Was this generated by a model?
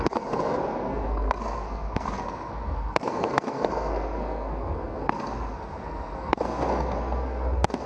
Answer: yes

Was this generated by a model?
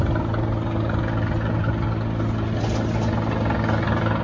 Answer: no